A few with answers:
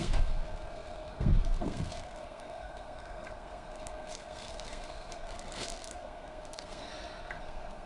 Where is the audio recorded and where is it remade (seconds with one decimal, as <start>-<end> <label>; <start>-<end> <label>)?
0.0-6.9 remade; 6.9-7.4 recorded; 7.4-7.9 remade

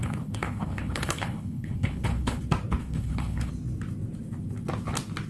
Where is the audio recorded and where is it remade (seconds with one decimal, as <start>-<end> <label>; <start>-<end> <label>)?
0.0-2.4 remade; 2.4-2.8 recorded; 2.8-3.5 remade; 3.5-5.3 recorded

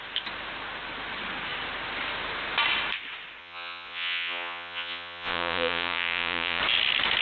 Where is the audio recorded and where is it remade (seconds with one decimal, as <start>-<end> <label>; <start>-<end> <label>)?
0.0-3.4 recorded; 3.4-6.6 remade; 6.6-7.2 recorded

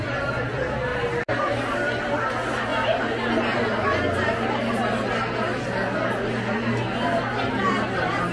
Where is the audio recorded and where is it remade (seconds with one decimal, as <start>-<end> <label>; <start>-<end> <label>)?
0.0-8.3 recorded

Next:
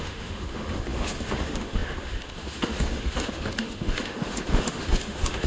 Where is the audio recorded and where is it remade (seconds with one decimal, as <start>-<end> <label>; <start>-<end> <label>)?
0.0-5.5 remade

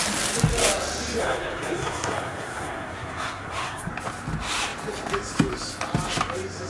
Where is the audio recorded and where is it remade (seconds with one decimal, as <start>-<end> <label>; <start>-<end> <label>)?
0.0-1.2 recorded; 1.2-3.9 remade; 3.9-6.7 recorded

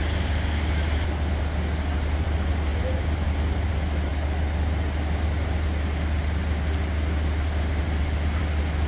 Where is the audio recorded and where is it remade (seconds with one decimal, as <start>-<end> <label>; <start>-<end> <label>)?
0.0-8.9 recorded